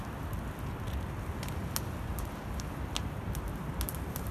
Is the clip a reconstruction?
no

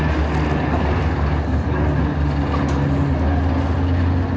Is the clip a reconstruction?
no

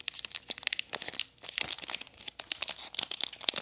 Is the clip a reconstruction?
no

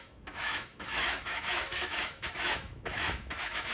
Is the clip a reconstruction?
yes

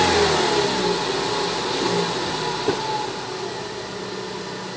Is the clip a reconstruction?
no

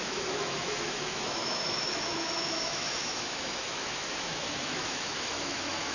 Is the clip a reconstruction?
yes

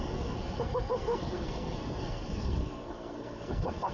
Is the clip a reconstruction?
yes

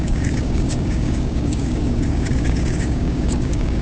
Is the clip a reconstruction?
yes